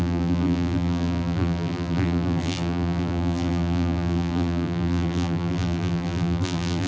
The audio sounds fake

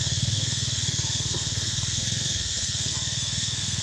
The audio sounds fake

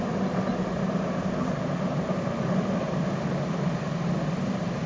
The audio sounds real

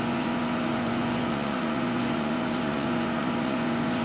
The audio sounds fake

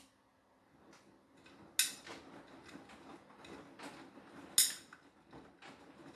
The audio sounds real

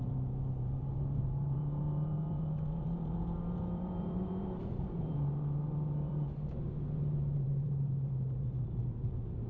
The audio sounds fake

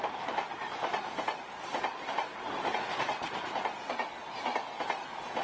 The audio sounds real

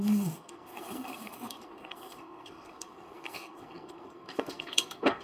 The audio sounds fake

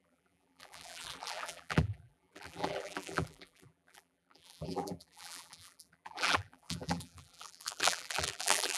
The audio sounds fake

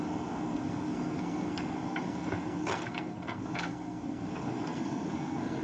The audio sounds fake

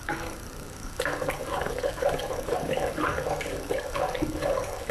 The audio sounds fake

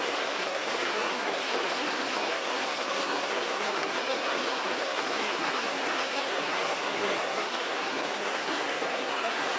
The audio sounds fake